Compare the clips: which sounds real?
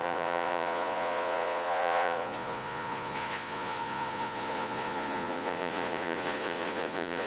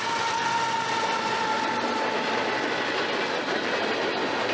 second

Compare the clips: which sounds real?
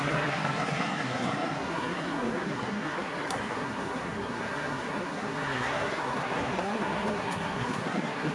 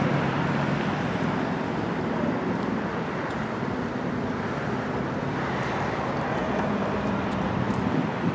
second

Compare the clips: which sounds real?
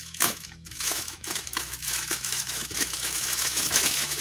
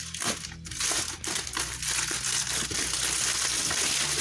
second